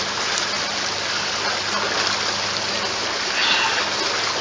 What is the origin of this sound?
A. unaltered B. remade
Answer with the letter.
A